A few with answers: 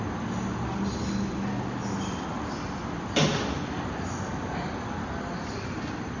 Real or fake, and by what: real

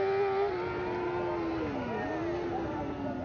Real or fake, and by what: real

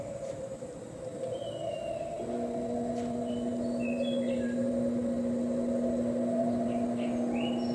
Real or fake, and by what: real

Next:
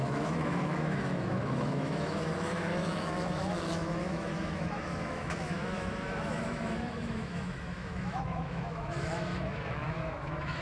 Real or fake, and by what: fake, autoencoder, DAC-VAE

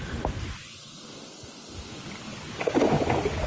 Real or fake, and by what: real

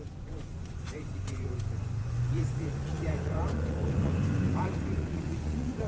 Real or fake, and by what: fake, vocoder, Vocos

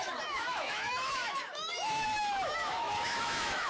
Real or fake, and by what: fake, autoencoder, DAC-VAE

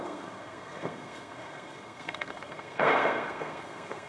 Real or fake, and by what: fake, codec, SNAC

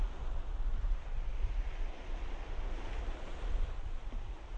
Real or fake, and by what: real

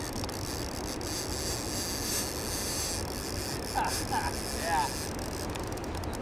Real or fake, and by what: real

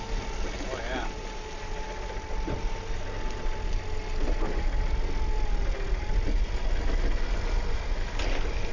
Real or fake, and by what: real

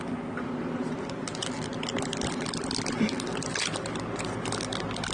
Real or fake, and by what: real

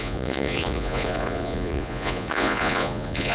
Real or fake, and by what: fake, vocoder, Vocos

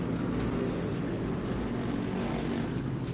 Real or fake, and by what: real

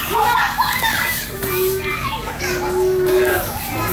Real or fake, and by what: fake, codec, DAC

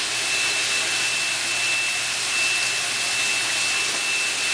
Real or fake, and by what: real